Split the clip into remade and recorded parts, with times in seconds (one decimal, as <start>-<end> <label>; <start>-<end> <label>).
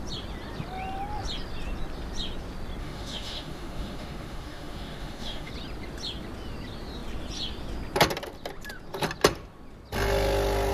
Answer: 0.0-2.8 recorded; 2.8-5.5 remade; 5.5-10.7 recorded